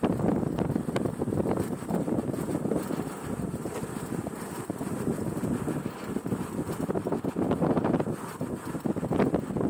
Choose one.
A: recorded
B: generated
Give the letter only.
B